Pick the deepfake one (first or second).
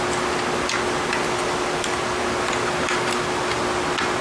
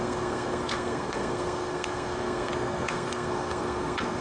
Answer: second